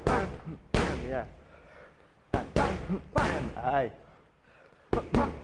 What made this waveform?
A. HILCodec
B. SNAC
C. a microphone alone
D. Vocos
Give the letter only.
C